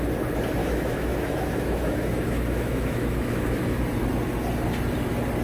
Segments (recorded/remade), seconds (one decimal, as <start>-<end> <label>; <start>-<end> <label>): 0.0-0.6 recorded; 0.6-3.8 remade; 3.8-5.4 recorded